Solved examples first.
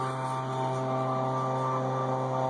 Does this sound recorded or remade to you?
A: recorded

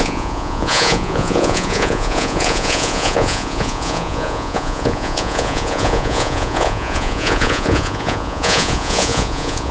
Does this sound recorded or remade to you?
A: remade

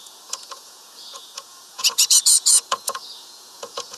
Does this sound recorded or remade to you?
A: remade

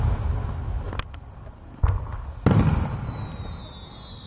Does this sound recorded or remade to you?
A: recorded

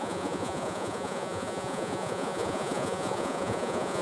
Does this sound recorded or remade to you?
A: remade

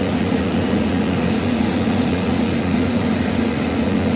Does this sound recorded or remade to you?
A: remade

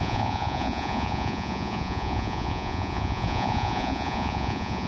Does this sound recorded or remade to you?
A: remade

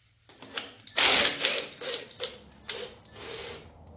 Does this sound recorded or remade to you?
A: recorded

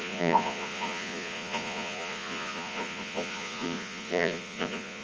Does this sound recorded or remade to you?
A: remade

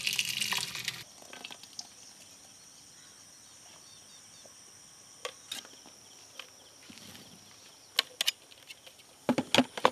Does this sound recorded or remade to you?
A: recorded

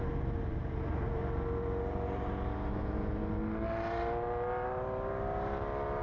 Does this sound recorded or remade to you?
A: recorded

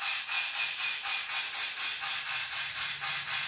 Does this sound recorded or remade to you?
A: recorded